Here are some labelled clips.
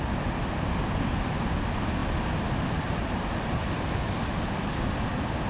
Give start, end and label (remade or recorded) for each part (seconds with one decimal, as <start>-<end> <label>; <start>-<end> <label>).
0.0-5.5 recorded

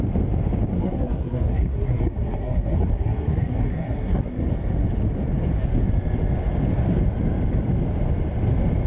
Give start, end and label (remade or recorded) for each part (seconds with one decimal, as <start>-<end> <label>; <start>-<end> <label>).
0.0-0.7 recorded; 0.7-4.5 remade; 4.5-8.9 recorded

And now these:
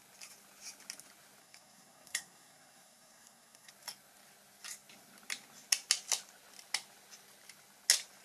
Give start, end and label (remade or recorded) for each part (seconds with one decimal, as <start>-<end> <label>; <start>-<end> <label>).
0.0-1.4 recorded; 1.4-3.7 remade; 3.7-8.2 recorded

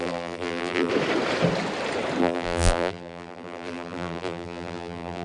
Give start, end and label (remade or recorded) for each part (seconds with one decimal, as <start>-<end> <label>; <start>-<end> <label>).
0.0-0.9 remade; 0.9-2.2 recorded; 2.2-5.2 remade

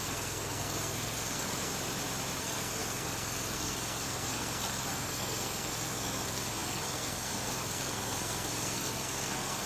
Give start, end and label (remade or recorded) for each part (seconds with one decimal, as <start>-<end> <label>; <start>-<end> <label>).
0.0-1.7 remade; 1.7-2.4 recorded; 2.4-9.7 remade